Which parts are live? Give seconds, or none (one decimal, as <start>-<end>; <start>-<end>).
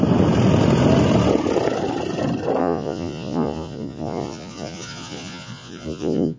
0.0-2.6